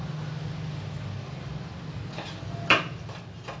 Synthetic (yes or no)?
no